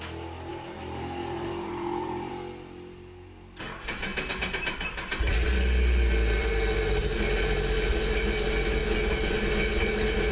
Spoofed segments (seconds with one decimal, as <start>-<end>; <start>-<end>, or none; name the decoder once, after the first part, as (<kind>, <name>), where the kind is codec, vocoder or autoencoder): 0.5-2.3 (vocoder, BigVGAN v2)